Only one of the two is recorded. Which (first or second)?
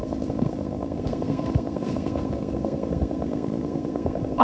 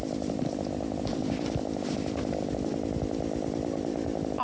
second